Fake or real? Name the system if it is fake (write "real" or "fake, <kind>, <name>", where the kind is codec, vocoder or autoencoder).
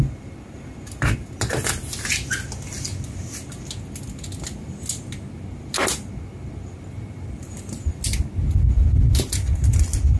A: real